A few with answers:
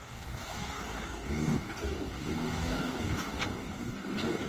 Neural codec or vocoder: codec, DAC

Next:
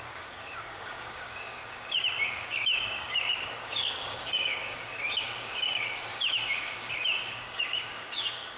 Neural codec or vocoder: codec, DAC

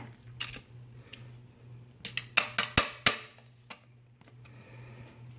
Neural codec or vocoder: none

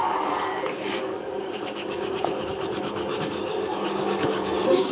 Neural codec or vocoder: codec, DAC